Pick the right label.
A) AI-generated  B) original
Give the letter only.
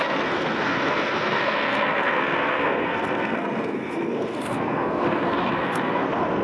A